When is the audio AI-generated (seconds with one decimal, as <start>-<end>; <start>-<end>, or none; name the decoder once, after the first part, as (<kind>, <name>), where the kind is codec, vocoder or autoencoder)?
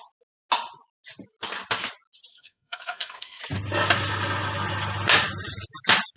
2.3-3.4 (codec, SNAC)